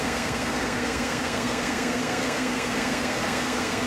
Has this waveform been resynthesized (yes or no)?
yes